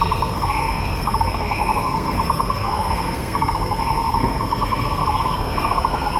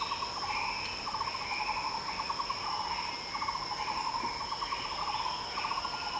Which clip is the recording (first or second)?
second